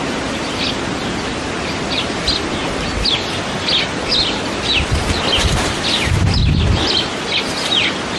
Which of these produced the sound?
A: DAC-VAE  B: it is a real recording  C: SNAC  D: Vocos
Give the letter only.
B